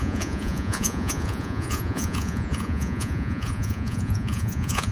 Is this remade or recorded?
remade